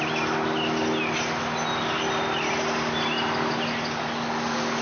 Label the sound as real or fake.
real